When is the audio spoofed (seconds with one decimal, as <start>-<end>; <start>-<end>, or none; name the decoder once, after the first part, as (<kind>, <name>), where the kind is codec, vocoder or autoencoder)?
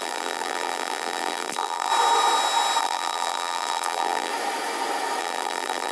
0.0-1.9 (vocoder, BigVGAN v2); 2.8-4.3; 5.2-5.9